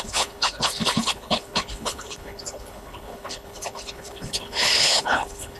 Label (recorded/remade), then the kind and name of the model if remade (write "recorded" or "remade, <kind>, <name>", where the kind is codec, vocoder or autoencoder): remade, codec, HILCodec